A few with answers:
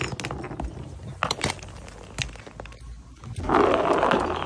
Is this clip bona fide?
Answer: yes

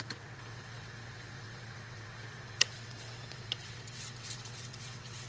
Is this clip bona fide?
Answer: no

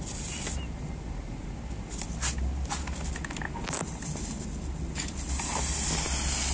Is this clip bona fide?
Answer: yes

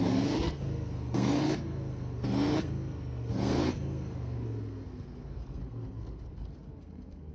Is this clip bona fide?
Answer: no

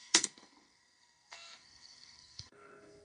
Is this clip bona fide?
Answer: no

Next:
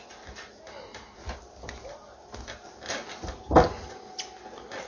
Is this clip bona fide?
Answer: yes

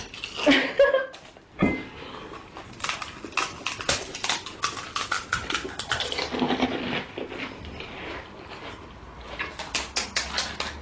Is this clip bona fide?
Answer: yes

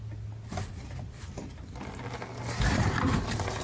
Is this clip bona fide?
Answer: yes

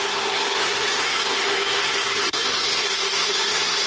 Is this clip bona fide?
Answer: no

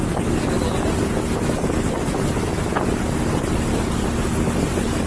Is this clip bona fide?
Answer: yes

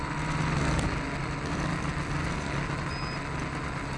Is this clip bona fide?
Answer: yes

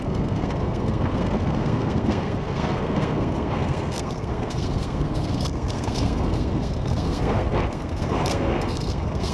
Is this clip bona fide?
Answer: no